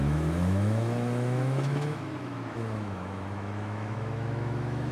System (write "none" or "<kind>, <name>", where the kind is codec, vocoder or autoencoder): autoencoder, DAC-VAE